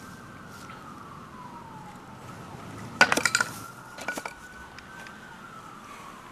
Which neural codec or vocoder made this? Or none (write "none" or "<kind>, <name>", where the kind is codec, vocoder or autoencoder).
none